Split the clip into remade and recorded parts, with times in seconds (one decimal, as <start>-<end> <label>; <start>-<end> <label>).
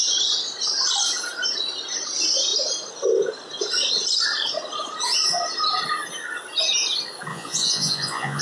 0.0-7.3 recorded; 7.3-8.4 remade